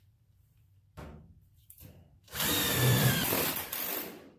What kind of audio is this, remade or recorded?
remade